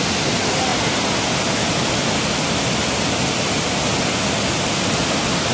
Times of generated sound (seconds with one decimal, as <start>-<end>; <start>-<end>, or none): none